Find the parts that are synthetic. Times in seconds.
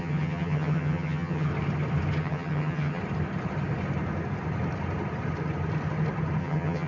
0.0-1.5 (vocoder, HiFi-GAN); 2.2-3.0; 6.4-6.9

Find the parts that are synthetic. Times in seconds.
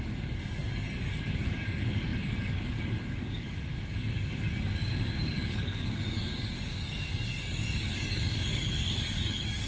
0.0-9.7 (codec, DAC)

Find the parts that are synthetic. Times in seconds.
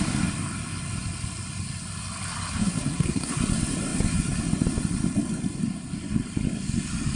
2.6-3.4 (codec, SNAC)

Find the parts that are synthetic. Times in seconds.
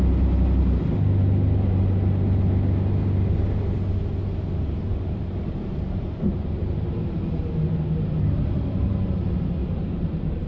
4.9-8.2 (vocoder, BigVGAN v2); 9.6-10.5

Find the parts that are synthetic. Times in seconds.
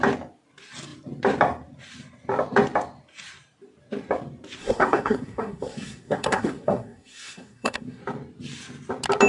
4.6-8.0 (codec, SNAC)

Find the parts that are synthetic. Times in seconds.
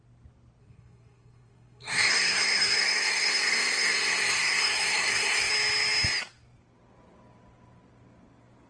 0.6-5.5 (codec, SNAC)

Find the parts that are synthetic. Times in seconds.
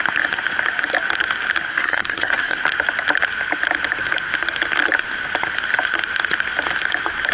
1.7-2.6 (codec, SNAC)